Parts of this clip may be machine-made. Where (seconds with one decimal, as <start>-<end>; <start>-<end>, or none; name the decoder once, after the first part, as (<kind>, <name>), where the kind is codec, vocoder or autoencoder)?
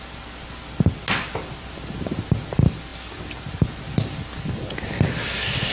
none